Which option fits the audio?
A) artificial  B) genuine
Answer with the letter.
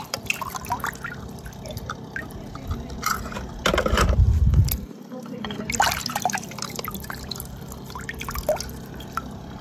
B